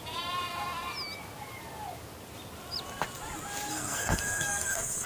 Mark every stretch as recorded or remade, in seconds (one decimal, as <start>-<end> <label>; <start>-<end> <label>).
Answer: 0.0-3.7 recorded; 3.7-5.1 remade